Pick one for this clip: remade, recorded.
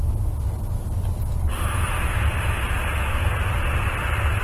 recorded